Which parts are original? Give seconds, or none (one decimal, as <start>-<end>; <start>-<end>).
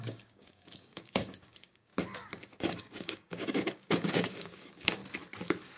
1.9-2.6; 5.0-5.8